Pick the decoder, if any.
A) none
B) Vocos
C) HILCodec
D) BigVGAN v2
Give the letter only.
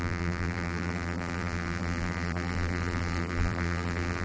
D